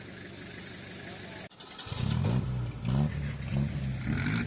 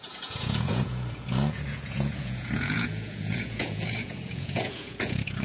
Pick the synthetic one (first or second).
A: second